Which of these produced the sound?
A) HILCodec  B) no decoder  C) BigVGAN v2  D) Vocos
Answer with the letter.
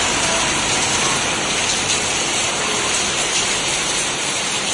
C